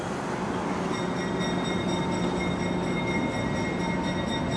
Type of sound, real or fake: real